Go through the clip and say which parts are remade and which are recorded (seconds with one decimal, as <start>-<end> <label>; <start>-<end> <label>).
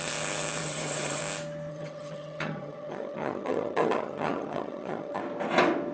0.0-0.6 recorded; 0.6-1.2 remade; 1.2-1.7 recorded; 1.7-5.2 remade; 5.2-5.9 recorded